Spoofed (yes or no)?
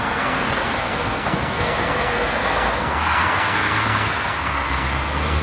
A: yes